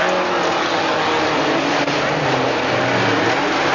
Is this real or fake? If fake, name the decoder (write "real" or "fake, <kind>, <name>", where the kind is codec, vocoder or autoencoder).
real